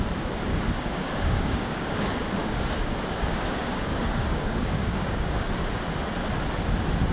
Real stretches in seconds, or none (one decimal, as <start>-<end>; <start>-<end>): 0.0-0.5; 1.9-2.4; 5.5-7.1